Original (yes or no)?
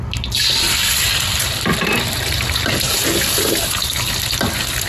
yes